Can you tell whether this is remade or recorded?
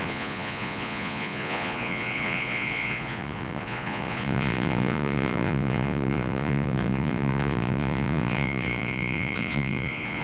remade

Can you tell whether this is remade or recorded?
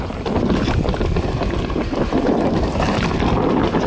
recorded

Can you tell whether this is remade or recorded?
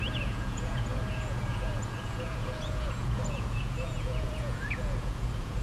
remade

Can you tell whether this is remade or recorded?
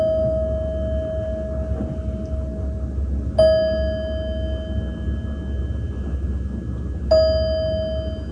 recorded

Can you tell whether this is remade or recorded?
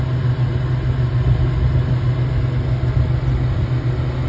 recorded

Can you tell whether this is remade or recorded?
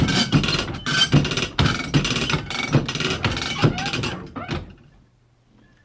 recorded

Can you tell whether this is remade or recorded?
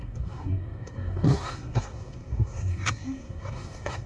remade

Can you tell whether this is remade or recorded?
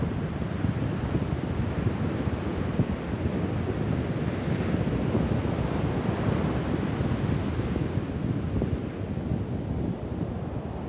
recorded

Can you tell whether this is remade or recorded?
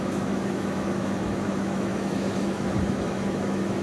remade